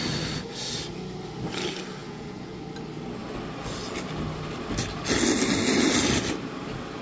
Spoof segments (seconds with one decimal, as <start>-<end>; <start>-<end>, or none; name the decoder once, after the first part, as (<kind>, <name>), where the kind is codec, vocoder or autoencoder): 2.0-2.6 (vocoder, Vocos)